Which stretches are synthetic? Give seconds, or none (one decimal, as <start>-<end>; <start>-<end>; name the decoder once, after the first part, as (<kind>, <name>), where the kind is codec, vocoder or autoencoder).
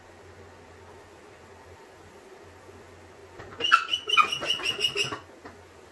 none